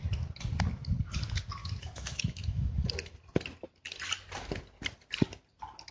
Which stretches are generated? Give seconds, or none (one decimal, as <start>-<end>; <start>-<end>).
1.6-2.9